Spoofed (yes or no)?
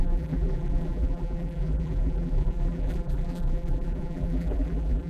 yes